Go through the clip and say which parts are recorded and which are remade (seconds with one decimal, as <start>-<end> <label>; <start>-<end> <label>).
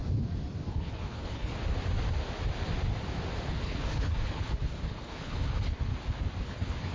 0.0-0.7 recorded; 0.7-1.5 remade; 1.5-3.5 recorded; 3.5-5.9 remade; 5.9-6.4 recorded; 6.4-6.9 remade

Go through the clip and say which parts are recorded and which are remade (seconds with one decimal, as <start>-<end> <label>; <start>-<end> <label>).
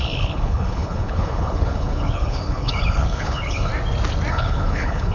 0.0-3.7 remade; 3.7-4.3 recorded; 4.3-5.1 remade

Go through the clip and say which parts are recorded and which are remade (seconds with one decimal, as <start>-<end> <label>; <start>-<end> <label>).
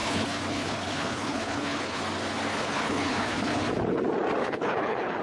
0.0-2.0 remade; 2.0-2.5 recorded; 2.5-3.7 remade; 3.7-4.4 recorded; 4.4-5.2 remade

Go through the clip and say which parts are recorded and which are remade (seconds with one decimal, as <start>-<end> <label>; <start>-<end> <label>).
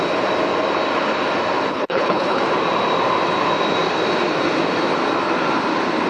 0.0-1.7 recorded; 1.7-2.4 remade; 2.4-6.1 recorded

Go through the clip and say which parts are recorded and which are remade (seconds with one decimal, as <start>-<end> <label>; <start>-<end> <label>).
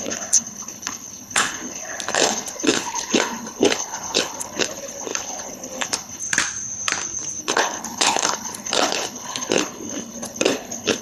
0.0-6.2 remade; 6.2-7.4 recorded; 7.4-11.0 remade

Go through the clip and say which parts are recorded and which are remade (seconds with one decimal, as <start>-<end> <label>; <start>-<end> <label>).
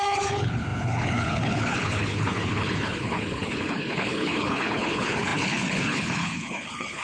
0.0-7.0 remade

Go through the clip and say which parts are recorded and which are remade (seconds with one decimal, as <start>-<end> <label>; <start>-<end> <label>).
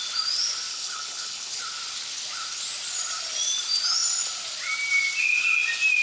0.0-0.7 recorded; 0.7-1.6 remade; 1.6-6.0 recorded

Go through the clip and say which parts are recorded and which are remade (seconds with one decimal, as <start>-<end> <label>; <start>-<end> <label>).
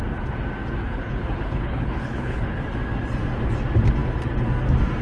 0.0-0.8 recorded; 0.8-2.6 remade; 2.6-5.0 recorded